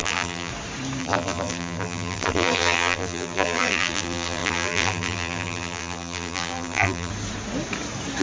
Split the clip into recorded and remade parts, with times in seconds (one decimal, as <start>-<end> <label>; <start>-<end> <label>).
0.0-0.5 remade; 0.5-1.0 recorded; 1.0-7.1 remade; 7.1-8.2 recorded